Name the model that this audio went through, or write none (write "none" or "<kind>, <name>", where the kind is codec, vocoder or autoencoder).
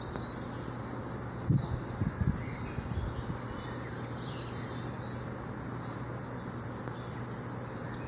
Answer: none